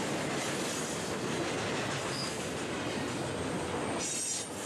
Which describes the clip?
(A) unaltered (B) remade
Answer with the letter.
A